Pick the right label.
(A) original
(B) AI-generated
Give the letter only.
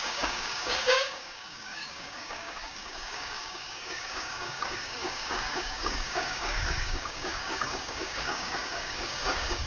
B